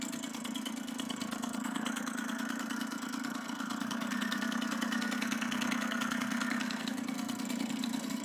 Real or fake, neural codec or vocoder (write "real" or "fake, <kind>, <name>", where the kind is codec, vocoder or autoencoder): fake, codec, SNAC